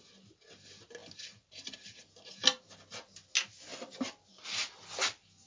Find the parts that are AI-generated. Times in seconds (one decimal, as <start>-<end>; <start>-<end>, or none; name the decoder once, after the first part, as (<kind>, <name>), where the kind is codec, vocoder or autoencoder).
none